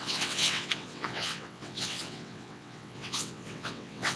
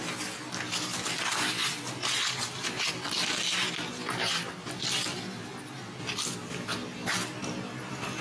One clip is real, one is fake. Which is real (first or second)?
second